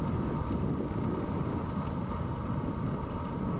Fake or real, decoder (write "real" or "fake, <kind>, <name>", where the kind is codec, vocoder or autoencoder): real